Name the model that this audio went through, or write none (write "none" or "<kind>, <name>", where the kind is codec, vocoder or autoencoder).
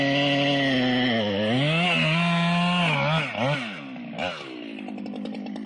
none